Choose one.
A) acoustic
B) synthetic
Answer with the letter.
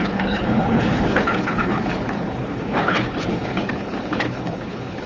B